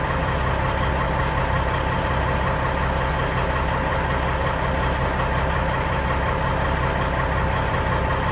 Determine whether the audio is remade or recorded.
recorded